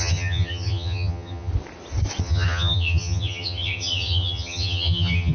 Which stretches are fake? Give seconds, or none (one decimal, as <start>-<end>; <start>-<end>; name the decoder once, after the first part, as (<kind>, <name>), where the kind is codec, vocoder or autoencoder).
0.0-1.5 (vocoder, HiFi-GAN); 2.2-5.3